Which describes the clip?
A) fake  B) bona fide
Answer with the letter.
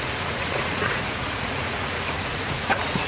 A